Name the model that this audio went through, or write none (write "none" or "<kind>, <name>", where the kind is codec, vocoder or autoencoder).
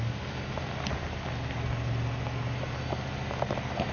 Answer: none